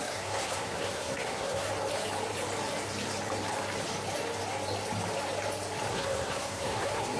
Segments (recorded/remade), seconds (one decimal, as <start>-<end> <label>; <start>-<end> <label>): 0.0-1.7 remade; 1.7-5.9 recorded; 5.9-7.2 remade